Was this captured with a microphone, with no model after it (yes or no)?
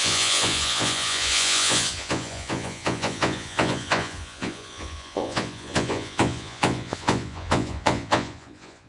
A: no